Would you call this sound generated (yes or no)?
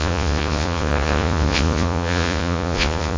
yes